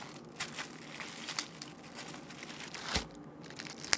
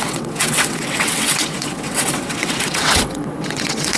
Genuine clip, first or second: first